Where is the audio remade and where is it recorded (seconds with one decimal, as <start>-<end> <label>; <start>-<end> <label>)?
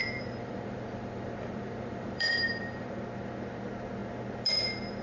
0.0-3.0 remade; 3.0-5.0 recorded